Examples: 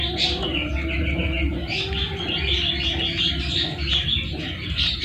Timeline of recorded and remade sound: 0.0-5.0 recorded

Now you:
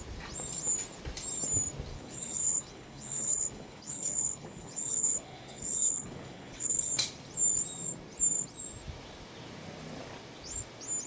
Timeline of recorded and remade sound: 0.0-1.9 recorded; 1.9-6.9 remade; 6.9-11.1 recorded

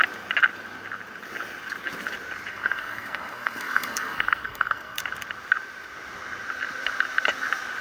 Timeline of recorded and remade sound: 0.0-2.5 recorded; 2.5-5.0 remade; 5.0-7.8 recorded

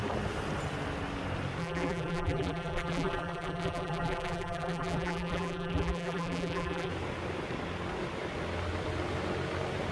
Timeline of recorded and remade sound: 0.0-1.6 recorded; 1.6-6.9 remade; 6.9-9.9 recorded

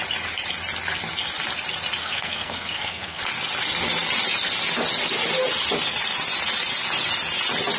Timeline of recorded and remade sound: 0.0-2.0 recorded; 2.0-3.2 remade; 3.2-7.8 recorded

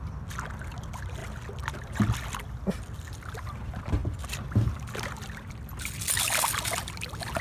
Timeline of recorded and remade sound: 0.0-7.4 recorded

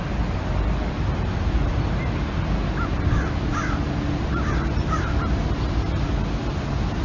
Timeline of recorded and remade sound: 0.0-7.0 recorded

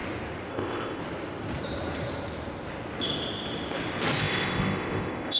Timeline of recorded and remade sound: 0.0-0.5 recorded; 0.5-1.0 remade; 1.0-4.2 recorded; 4.2-5.4 remade